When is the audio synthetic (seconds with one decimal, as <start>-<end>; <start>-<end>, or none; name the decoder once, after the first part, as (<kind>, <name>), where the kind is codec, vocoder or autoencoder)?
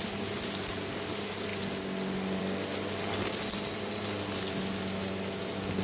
none